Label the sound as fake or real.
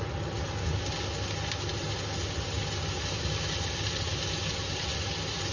real